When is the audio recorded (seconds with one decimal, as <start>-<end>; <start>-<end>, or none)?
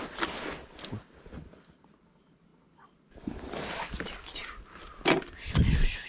0.0-6.1